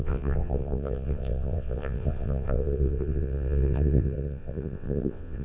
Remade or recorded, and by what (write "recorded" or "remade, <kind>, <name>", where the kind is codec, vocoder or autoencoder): remade, vocoder, WaveNeXt